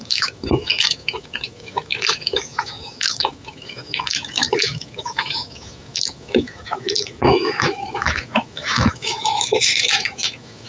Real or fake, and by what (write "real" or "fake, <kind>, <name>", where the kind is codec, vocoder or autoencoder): fake, autoencoder, DAC-VAE